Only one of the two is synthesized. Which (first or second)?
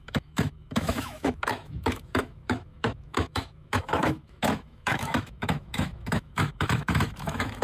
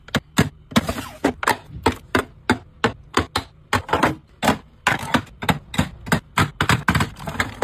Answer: first